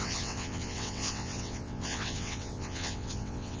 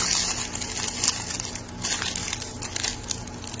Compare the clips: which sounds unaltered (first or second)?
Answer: second